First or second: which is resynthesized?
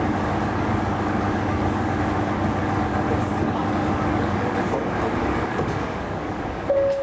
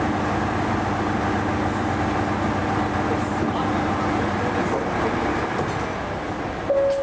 first